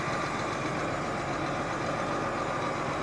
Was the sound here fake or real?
fake